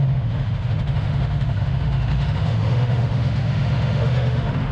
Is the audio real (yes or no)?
no